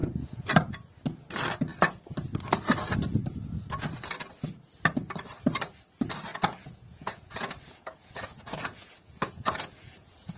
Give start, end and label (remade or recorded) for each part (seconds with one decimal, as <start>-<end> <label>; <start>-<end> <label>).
0.0-0.5 remade; 0.5-6.3 recorded; 6.3-10.4 remade